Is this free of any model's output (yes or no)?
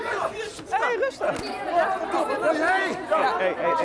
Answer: yes